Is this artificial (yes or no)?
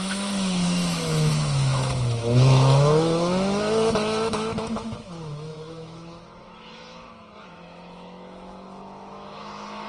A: yes